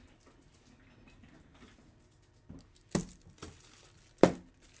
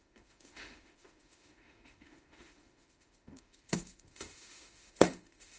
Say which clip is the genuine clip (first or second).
first